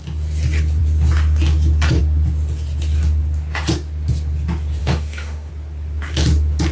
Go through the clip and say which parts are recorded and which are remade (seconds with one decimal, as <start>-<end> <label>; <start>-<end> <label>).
0.0-4.8 recorded; 4.8-5.5 remade; 5.5-6.7 recorded